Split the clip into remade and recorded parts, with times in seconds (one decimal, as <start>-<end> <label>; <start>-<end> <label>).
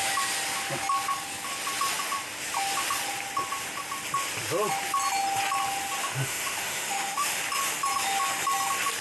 0.0-6.0 recorded; 6.0-7.4 remade; 7.4-9.0 recorded